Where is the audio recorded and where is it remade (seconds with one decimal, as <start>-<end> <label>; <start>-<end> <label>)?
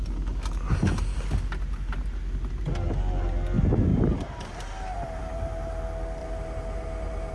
0.0-3.9 recorded; 3.9-5.8 remade; 5.8-6.2 recorded; 6.2-7.3 remade